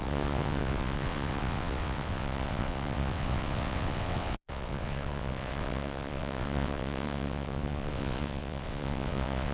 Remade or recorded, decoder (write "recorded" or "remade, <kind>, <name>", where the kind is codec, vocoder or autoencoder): remade, vocoder, WaveNeXt